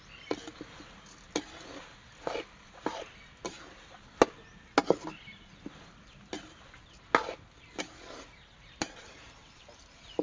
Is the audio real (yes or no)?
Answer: yes